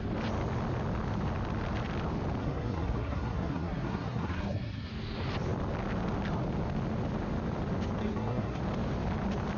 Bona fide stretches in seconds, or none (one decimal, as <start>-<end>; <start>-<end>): 0.0-2.4; 4.9-8.0; 8.6-9.6